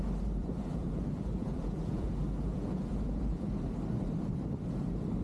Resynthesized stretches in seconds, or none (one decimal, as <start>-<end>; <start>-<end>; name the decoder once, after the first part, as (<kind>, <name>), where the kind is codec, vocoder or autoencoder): 0.4-3.5 (vocoder, BigVGAN v2)

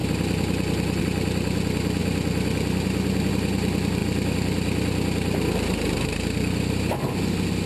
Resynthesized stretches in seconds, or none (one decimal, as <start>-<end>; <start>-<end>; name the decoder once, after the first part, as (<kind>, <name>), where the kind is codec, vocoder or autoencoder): none

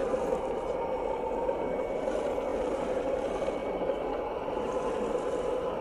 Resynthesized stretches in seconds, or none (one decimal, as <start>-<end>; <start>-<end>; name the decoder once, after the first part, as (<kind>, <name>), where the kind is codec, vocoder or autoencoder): 0.0-1.0 (vocoder, BigVGAN v2); 2.5-3.0